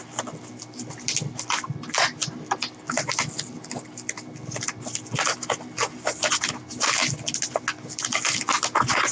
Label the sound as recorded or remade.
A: recorded